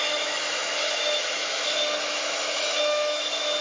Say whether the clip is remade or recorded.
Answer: remade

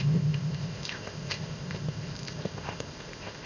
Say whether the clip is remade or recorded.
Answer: remade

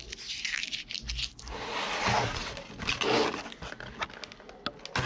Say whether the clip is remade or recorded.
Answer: recorded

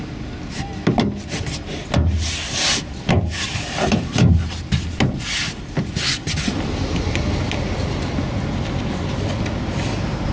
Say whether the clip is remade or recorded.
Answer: recorded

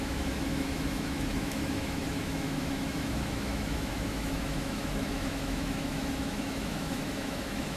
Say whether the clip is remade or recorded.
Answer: remade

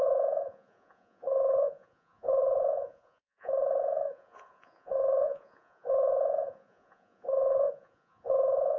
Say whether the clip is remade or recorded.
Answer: remade